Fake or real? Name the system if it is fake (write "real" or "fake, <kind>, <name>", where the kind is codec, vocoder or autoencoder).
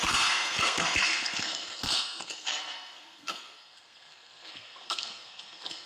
fake, codec, SNAC